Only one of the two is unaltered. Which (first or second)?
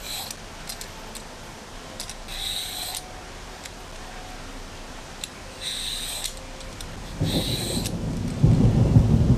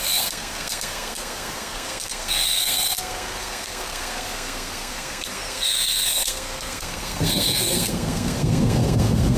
first